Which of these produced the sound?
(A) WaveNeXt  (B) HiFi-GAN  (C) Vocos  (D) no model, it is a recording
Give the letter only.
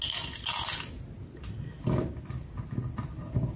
D